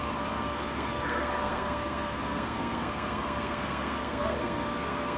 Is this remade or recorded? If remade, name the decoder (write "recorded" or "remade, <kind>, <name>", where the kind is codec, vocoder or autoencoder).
remade, codec, SNAC